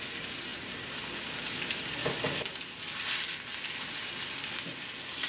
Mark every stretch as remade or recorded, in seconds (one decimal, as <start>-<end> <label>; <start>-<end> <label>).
0.0-2.0 remade; 2.0-5.3 recorded